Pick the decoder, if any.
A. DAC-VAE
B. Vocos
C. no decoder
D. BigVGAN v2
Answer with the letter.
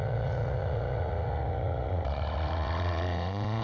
B